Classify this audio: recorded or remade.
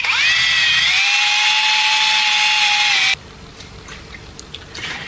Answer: recorded